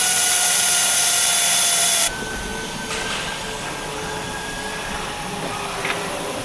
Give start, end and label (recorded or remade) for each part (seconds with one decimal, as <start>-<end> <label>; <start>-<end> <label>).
0.0-1.3 remade; 1.3-1.8 recorded; 1.8-2.5 remade; 2.5-5.8 recorded; 5.8-6.4 remade